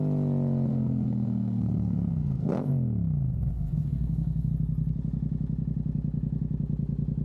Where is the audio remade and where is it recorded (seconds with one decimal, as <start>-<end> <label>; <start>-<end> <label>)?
0.0-0.7 recorded; 0.7-2.7 remade; 2.7-3.5 recorded; 3.5-4.5 remade; 4.5-7.2 recorded